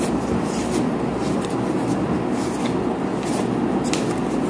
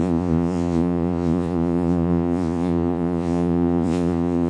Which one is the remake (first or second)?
second